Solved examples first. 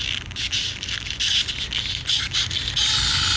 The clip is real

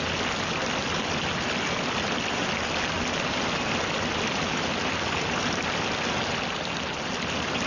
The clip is real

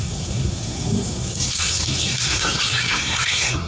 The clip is fake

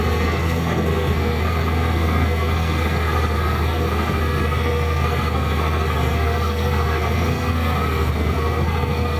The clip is fake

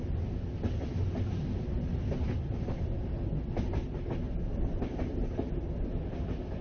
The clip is real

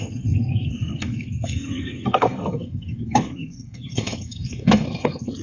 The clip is fake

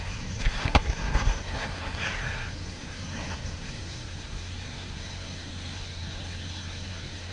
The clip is fake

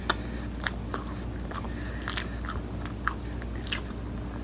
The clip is real